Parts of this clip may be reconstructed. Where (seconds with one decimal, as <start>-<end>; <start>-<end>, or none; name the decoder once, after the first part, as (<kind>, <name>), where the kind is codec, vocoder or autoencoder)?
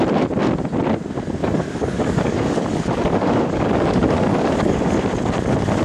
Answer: 1.4-4.9 (codec, DAC)